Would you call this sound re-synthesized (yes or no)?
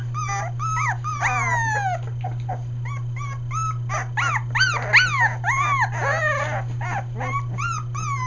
no